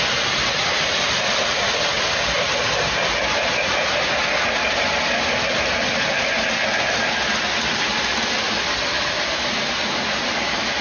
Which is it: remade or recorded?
recorded